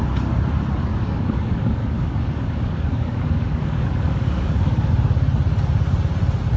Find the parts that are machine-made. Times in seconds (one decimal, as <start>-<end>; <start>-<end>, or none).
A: 0.9-4.9